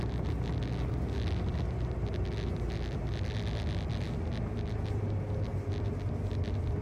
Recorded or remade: recorded